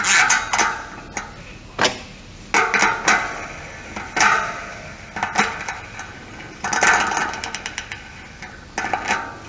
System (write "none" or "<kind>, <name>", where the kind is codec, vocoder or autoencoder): none